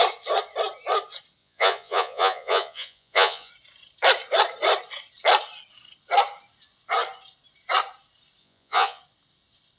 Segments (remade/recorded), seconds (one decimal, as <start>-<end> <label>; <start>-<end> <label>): 0.0-1.4 recorded; 1.4-3.5 remade; 3.5-8.4 recorded; 8.4-9.0 remade; 9.0-9.8 recorded